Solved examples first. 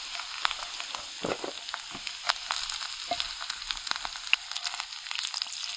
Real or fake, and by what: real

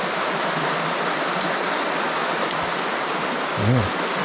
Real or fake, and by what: real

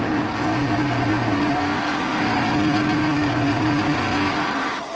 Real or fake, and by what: real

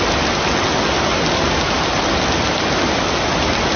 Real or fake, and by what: real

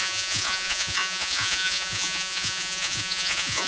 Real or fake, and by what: fake, vocoder, Vocos